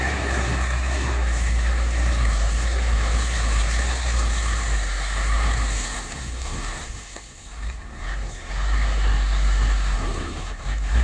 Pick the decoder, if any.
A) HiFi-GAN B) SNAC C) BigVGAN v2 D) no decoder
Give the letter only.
B